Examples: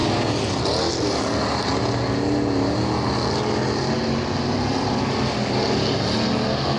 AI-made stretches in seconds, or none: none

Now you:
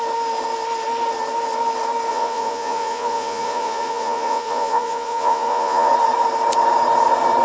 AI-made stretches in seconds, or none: 2.1-5.9 (vocoder, Vocos)

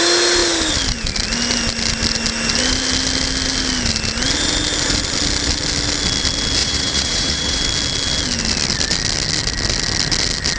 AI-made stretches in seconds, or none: 6.6-7.6 (vocoder, Vocos)

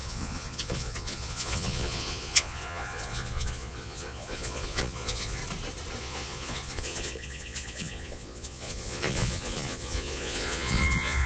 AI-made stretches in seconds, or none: 0.0-5.4 (vocoder, Vocos); 6.0-11.3

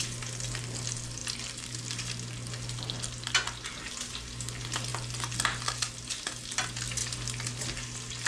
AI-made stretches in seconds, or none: none

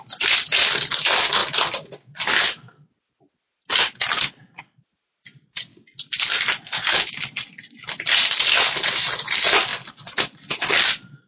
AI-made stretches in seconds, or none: none

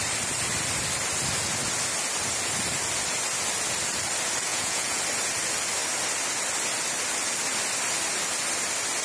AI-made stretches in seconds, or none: 4.5-5.0 (vocoder, Vocos)